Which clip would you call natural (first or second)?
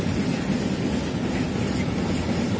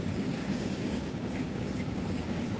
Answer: first